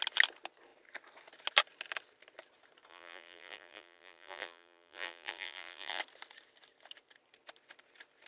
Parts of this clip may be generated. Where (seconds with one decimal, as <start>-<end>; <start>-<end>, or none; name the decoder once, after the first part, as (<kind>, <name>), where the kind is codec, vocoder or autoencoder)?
2.9-6.0 (vocoder, BigVGAN v2)